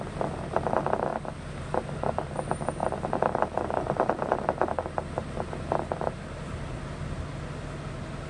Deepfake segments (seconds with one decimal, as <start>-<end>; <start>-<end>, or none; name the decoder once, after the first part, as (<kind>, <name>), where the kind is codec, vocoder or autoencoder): none